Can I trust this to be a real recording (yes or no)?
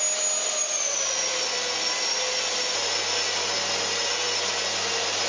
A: yes